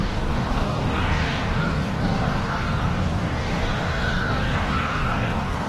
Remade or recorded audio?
remade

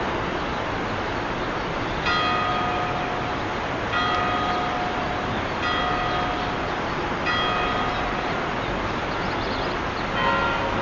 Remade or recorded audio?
recorded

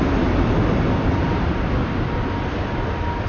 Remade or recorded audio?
recorded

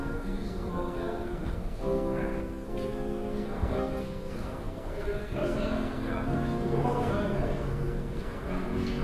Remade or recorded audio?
remade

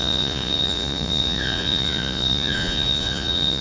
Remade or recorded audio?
remade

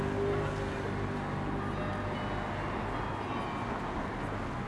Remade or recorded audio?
recorded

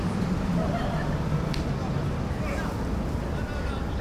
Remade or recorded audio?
recorded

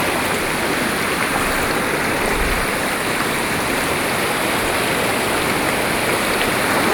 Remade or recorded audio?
recorded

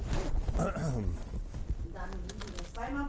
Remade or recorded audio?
recorded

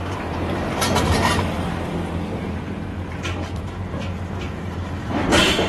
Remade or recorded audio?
remade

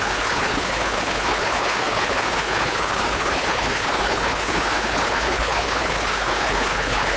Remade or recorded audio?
remade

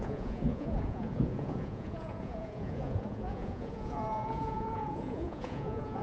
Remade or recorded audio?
remade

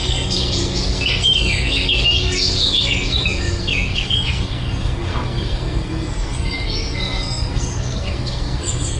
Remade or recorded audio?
remade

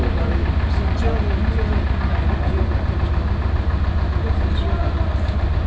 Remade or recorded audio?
recorded